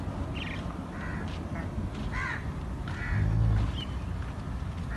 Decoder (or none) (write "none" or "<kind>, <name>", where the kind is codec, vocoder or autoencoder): none